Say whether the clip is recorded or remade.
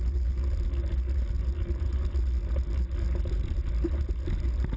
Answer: recorded